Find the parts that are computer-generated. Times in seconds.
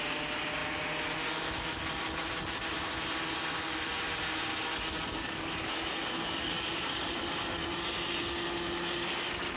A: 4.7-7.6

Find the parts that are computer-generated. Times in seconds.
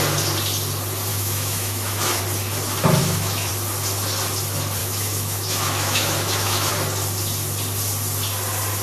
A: 1.1-2.2; 3.0-3.5; 4.8-6.7